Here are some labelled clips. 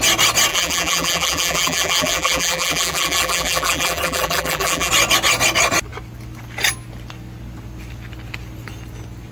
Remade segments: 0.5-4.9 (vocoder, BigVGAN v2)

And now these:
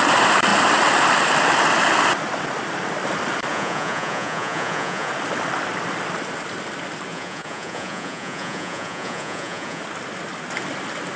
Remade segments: 3.5-5.1 (vocoder, Vocos); 7.1-9.8